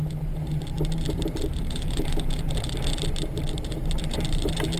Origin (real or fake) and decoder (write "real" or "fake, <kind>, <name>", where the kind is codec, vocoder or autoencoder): fake, vocoder, BigVGAN v2